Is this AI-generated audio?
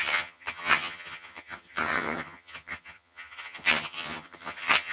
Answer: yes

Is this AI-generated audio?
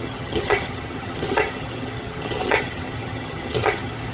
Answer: yes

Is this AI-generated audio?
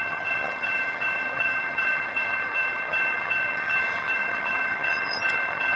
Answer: yes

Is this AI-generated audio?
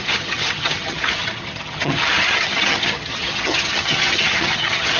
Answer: yes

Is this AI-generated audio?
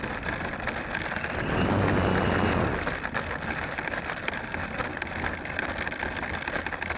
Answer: no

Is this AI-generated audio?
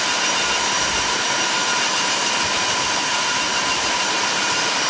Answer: no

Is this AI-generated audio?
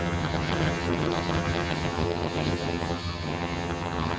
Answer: yes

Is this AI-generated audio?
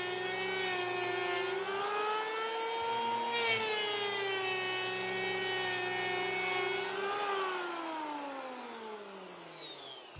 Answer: no